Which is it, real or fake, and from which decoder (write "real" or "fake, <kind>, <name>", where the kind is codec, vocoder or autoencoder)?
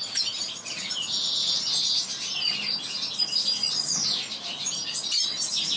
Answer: real